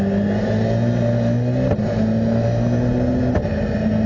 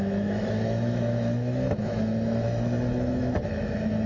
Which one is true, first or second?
first